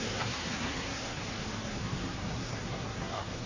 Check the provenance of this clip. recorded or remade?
remade